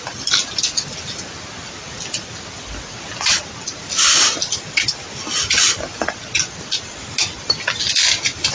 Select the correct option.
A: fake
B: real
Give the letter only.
B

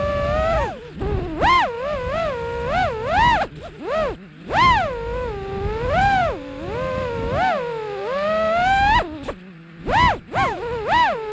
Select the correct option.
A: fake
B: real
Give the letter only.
B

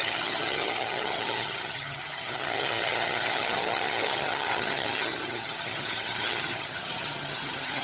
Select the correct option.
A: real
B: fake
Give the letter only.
B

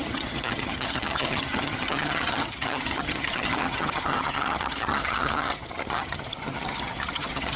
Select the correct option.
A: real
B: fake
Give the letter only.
B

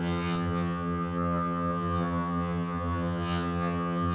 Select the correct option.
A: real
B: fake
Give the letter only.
B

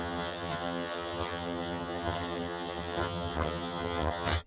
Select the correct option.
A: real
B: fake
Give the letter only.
B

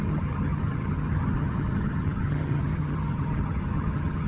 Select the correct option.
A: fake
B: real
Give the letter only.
A